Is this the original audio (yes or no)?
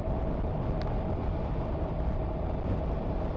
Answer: yes